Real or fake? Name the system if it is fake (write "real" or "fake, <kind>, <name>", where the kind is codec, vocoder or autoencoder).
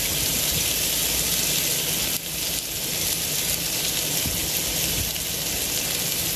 real